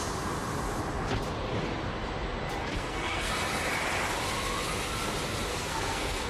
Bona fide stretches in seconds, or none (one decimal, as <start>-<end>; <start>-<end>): 0.0-2.6; 3.3-5.5